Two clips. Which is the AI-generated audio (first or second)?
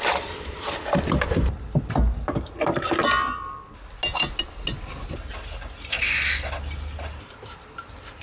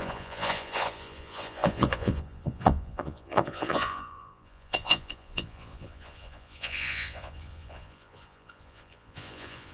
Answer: second